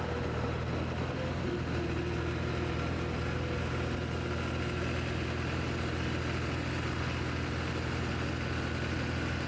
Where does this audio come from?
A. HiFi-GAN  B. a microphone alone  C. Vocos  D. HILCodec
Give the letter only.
B